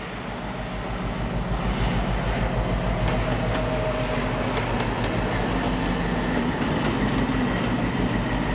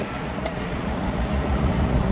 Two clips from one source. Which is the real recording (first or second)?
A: first